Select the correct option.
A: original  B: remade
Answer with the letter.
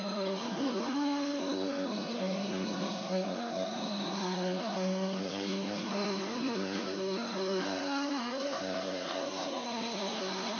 B